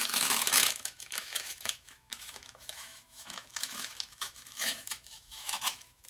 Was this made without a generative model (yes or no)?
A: no